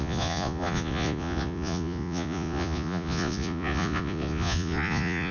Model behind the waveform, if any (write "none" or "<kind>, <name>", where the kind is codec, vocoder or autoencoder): vocoder, Vocos